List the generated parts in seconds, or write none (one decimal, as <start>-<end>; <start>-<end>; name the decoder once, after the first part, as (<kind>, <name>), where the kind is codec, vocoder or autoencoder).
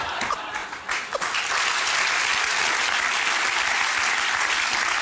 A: none